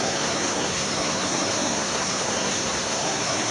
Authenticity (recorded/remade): remade